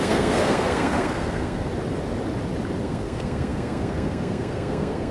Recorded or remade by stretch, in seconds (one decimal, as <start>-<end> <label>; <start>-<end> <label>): 0.0-1.7 remade; 1.7-2.8 recorded; 2.8-5.1 remade